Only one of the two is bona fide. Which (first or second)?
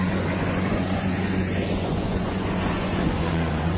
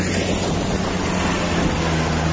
second